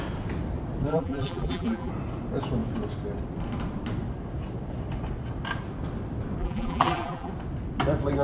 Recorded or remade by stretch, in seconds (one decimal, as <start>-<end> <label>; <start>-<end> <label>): 0.0-0.9 recorded; 0.9-1.9 remade; 1.9-6.4 recorded; 6.4-7.3 remade; 7.3-8.2 recorded